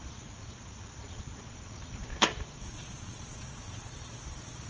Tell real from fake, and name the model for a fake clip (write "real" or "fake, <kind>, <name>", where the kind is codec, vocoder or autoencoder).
fake, vocoder, Vocos